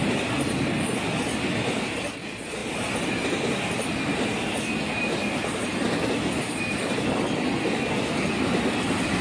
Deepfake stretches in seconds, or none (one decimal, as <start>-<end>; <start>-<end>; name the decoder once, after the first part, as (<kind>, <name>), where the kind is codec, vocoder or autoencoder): none